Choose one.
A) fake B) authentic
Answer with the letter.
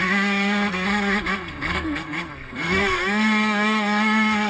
A